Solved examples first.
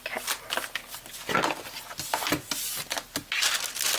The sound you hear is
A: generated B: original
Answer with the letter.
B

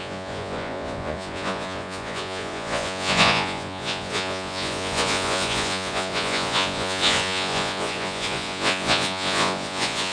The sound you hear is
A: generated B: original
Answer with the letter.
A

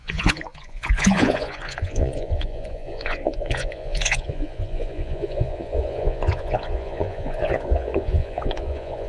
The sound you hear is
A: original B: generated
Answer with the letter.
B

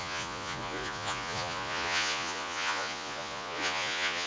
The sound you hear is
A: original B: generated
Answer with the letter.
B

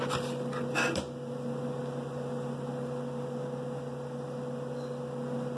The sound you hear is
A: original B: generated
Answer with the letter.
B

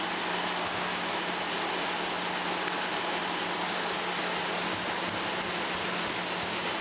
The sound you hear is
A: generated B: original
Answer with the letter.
B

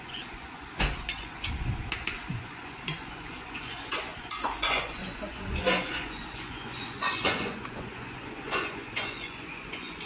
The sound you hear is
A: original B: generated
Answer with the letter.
B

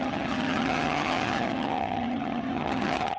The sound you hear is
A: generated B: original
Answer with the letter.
A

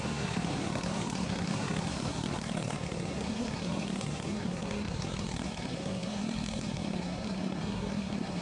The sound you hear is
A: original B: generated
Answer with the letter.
B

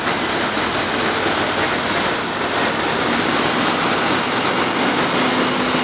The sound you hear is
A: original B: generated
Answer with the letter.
A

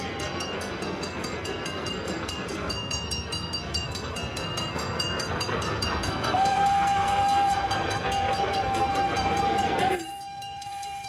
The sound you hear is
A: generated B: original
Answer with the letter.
A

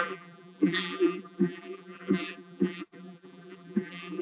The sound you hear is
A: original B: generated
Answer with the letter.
B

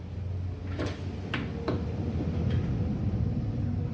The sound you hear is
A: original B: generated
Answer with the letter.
A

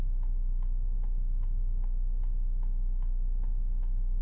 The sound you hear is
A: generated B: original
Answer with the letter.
A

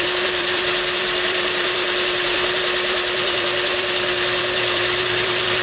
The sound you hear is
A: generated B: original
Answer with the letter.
A